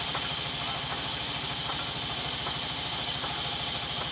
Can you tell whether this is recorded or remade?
recorded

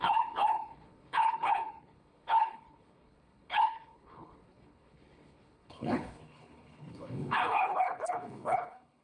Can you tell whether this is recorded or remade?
remade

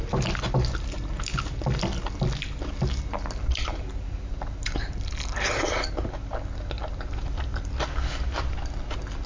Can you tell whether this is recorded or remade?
recorded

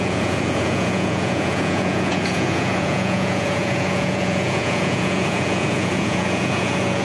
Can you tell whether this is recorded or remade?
remade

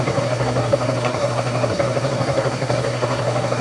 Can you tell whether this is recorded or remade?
remade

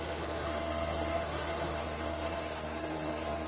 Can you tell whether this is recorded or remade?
remade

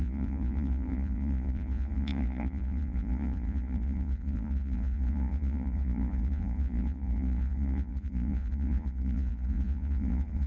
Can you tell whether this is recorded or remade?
remade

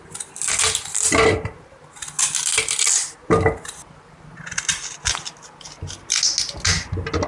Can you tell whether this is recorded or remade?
recorded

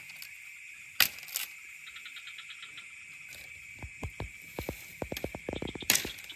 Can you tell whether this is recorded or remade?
recorded